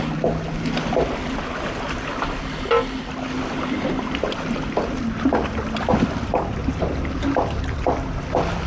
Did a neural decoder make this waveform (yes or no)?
no